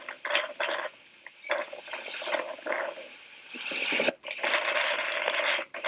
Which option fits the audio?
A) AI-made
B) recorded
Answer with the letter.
B